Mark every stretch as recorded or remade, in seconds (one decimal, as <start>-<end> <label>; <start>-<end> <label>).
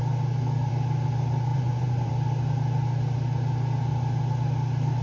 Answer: 0.0-1.5 recorded; 1.5-2.1 remade; 2.1-5.0 recorded